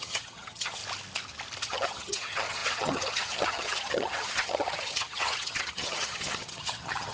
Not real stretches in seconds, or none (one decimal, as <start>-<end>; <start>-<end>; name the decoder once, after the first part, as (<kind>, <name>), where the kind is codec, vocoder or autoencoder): 0.0-0.8 (vocoder, HiFi-GAN); 1.6-7.1